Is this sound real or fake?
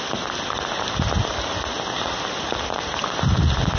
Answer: real